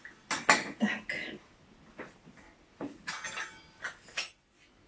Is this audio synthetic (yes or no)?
no